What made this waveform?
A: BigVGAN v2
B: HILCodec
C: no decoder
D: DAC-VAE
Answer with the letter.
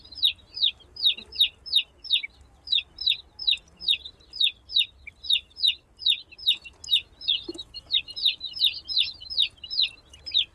C